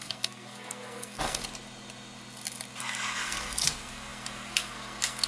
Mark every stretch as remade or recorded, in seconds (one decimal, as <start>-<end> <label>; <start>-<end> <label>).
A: 0.0-1.4 remade; 1.4-2.8 recorded; 2.8-5.3 remade